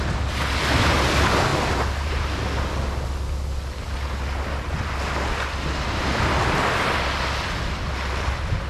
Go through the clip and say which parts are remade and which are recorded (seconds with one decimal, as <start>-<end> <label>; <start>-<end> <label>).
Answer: 0.0-1.5 recorded; 1.5-2.4 remade; 2.4-8.7 recorded